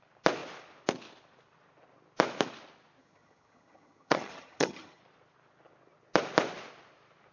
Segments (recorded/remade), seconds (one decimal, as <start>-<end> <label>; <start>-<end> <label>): 0.0-3.0 recorded; 3.0-5.0 remade; 5.0-7.3 recorded